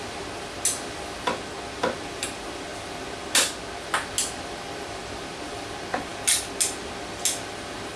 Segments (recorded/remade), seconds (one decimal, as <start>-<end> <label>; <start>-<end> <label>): 0.0-8.0 recorded